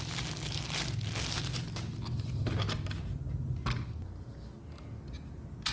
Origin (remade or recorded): recorded